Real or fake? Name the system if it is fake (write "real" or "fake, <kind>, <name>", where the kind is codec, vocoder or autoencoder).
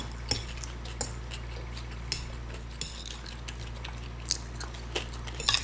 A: real